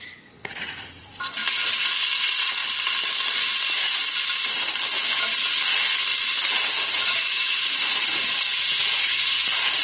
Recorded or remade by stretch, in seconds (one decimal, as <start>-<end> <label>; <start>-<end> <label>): 0.0-1.4 remade; 1.4-2.2 recorded; 2.2-2.6 remade; 2.6-6.8 recorded; 6.8-9.8 remade